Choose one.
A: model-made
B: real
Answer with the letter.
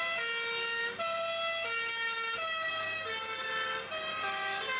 B